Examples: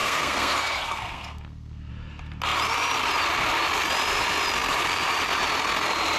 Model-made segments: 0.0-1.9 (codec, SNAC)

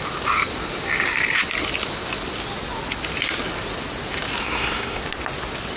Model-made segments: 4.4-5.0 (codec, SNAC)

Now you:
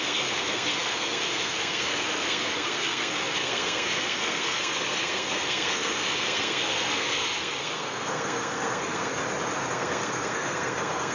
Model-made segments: 0.0-9.1 (codec, SNAC); 9.7-11.1